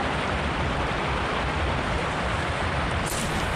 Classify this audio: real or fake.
real